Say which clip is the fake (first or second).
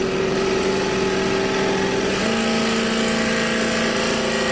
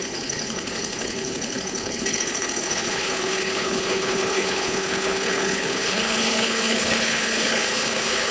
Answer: second